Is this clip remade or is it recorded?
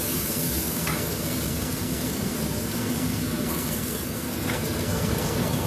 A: remade